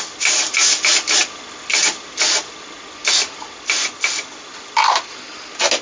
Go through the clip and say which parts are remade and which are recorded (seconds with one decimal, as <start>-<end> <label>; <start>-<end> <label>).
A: 0.0-5.8 recorded